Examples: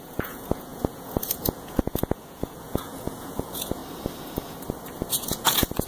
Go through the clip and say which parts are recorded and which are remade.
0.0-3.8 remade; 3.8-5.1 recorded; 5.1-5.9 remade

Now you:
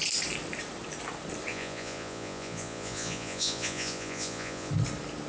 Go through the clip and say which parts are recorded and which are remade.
0.0-1.5 recorded; 1.5-4.7 remade; 4.7-5.3 recorded